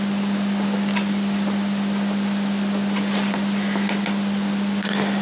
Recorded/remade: recorded